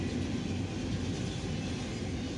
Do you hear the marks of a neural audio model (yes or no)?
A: no